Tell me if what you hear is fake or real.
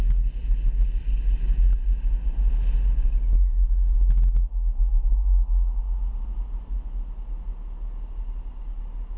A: real